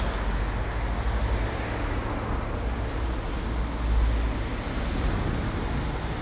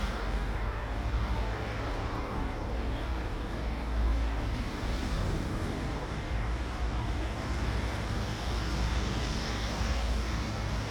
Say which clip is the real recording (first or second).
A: first